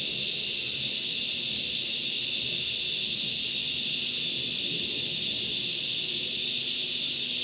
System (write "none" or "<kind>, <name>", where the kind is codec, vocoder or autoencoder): none